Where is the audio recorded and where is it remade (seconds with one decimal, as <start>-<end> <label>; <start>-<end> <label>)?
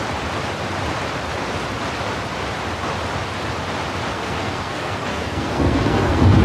0.0-4.1 recorded; 4.1-6.4 remade